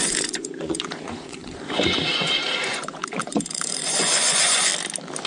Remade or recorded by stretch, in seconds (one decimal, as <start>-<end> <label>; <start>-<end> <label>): 0.0-4.7 remade; 4.7-5.3 recorded